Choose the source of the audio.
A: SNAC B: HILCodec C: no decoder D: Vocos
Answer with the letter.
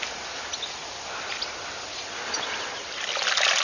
C